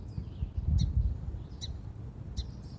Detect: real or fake real